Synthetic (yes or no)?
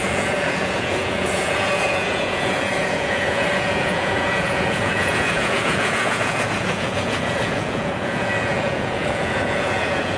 yes